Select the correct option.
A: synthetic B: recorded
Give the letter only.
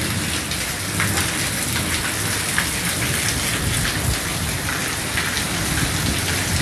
B